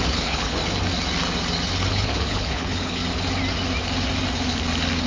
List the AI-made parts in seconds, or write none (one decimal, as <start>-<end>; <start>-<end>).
0.0-0.6; 1.9-3.0